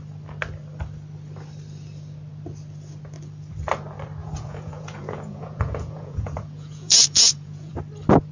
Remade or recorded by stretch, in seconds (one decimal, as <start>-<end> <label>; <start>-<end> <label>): 0.0-4.2 recorded; 4.2-7.7 remade; 7.7-8.3 recorded